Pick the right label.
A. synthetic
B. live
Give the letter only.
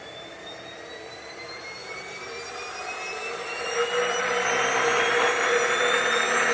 A